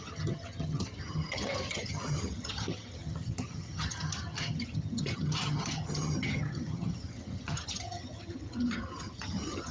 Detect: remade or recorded remade